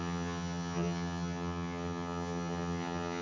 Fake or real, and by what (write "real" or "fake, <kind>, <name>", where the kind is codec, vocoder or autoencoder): fake, vocoder, HiFi-GAN